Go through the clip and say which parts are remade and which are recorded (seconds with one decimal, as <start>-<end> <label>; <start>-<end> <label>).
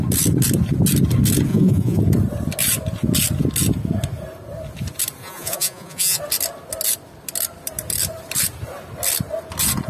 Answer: 0.0-1.5 recorded; 1.5-2.0 remade; 2.0-5.2 recorded; 5.2-6.2 remade; 6.2-9.9 recorded